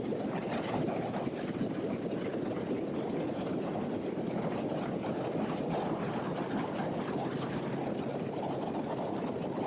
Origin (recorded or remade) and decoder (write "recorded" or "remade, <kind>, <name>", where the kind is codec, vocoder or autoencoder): recorded